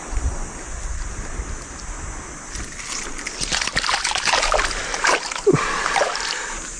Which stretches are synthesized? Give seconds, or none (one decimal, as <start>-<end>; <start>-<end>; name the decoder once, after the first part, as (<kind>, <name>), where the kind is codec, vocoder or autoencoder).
4.9-6.2 (vocoder, BigVGAN v2)